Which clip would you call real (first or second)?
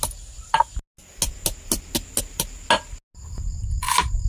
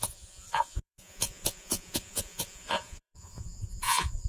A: first